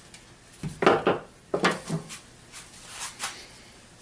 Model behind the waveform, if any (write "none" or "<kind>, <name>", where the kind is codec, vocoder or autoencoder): none